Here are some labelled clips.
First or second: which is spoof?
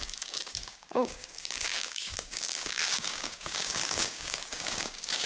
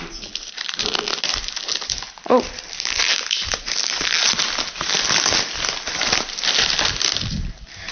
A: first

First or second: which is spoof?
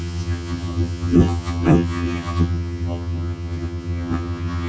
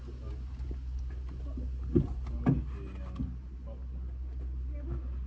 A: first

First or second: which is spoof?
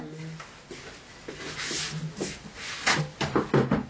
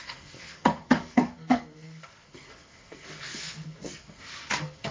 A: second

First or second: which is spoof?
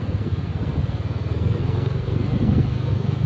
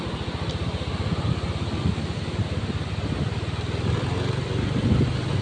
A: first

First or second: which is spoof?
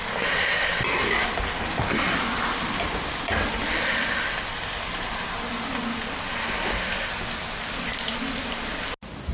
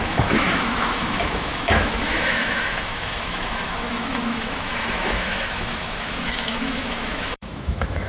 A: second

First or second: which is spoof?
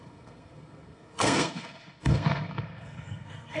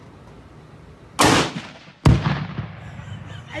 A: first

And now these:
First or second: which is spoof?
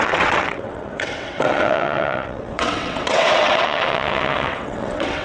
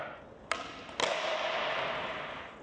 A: first